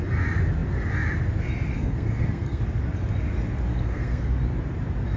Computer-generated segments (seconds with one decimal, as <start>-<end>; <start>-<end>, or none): 1.7-2.6; 3.7-4.3